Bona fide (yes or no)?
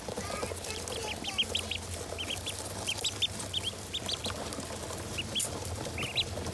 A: yes